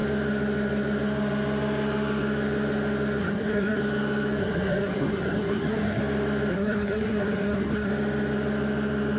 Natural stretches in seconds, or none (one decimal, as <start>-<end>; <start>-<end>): 0.0-3.2; 3.8-4.4; 6.0-6.5; 7.9-9.2